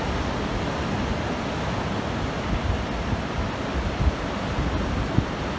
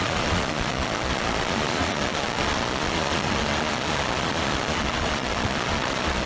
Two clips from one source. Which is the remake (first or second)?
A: second